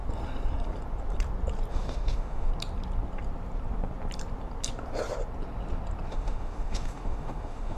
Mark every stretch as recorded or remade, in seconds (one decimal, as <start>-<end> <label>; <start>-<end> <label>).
0.0-1.7 recorded; 1.7-2.5 remade; 2.5-6.1 recorded; 6.1-7.8 remade